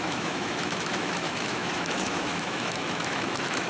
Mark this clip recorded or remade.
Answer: remade